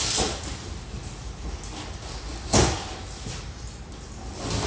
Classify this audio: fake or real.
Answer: real